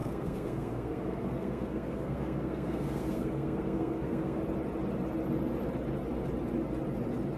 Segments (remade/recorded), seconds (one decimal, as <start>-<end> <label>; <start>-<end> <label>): 0.0-4.4 remade; 4.4-7.4 recorded